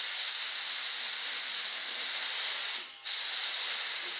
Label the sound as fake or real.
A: real